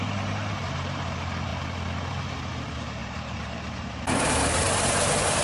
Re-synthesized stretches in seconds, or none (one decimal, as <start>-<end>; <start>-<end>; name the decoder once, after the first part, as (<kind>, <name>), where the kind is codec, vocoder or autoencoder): 0.0-1.5 (vocoder, BigVGAN v2); 2.2-5.4